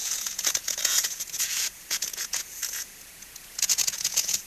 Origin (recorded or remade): remade